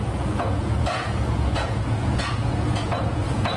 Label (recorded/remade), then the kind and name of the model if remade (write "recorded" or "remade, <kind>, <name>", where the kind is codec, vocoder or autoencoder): remade, vocoder, Vocos